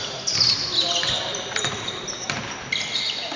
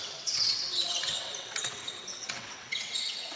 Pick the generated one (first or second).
second